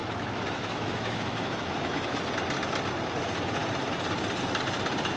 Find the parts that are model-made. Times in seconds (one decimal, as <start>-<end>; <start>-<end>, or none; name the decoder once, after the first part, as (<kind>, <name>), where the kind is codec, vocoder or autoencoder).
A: 0.0-2.2 (autoencoder, DAC-VAE)